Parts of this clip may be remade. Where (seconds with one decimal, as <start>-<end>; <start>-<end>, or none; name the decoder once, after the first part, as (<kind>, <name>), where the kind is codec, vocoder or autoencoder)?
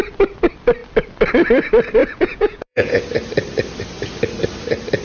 2.0-3.0 (vocoder, Vocos)